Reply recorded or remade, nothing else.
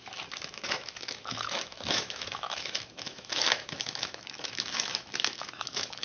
remade